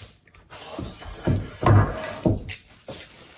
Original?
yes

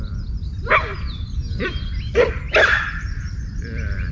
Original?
no